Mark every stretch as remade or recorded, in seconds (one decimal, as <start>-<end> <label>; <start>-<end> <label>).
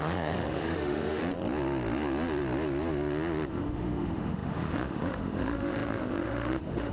0.0-1.2 remade; 1.2-3.5 recorded; 3.5-6.9 remade